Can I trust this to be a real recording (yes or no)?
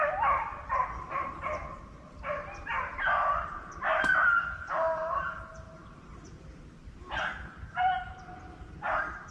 yes